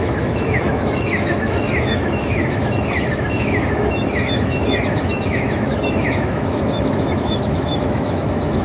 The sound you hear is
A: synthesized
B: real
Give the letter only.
A